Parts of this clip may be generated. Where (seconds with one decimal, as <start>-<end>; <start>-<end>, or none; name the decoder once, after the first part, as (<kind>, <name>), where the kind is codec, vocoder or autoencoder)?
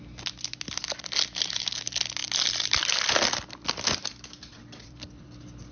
2.2-5.7 (vocoder, BigVGAN v2)